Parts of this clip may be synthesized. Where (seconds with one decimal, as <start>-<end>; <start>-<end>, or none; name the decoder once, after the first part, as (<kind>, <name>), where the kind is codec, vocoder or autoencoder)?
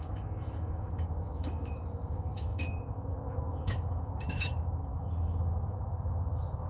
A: 0.0-6.7 (autoencoder, DAC-VAE)